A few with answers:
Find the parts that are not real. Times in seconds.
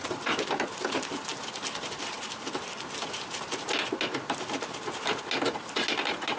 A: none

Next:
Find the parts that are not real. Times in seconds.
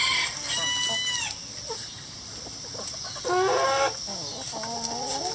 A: none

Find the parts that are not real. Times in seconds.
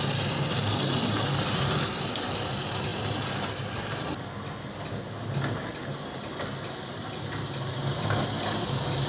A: none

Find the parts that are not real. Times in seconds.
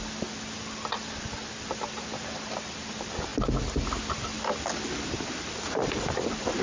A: 0.0-3.3 (vocoder, BigVGAN v2); 4.1-6.6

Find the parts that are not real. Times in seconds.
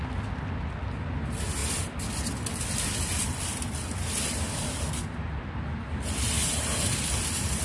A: none